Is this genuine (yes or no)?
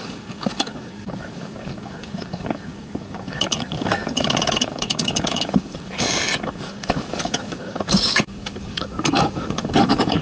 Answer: no